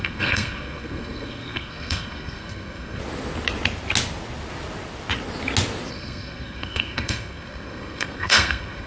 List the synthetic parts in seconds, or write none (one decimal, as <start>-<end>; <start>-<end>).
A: 0.0-3.0; 5.9-8.9